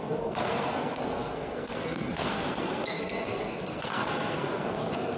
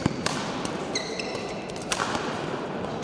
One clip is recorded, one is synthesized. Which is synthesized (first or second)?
first